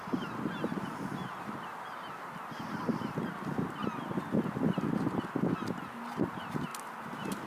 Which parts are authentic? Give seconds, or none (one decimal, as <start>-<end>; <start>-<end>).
0.0-7.5